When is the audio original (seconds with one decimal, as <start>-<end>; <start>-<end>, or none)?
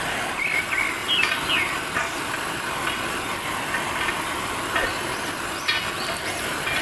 0.0-1.0; 4.1-6.8